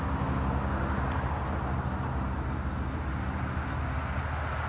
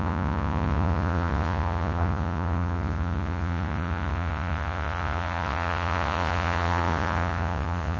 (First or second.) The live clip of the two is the first